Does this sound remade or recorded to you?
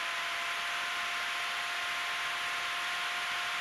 recorded